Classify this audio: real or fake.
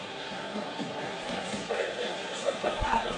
fake